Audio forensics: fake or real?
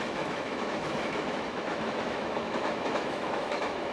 fake